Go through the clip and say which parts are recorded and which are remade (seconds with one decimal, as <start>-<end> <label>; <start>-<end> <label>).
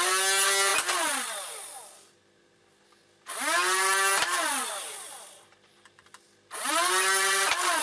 0.0-7.8 recorded